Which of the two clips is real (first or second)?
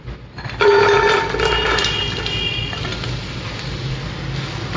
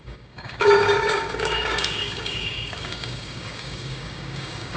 first